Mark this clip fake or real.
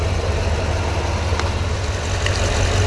real